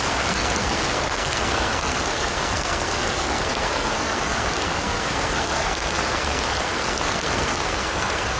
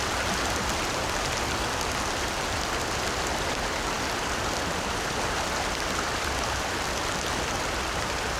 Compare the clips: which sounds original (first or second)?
second